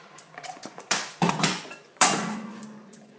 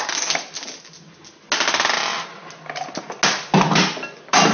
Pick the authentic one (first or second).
second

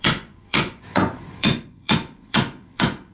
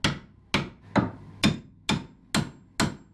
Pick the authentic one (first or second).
second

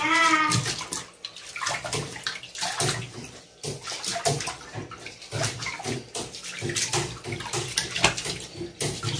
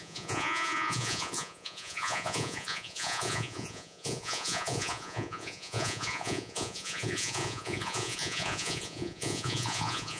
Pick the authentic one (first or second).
first